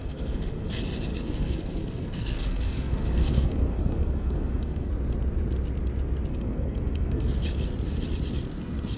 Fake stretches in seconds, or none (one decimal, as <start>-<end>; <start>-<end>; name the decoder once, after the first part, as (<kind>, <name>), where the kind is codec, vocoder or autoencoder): 0.0-0.7 (codec, SNAC); 1.1-4.9; 6.3-7.3